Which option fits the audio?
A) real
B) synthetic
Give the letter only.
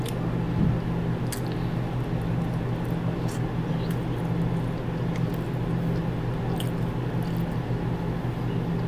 A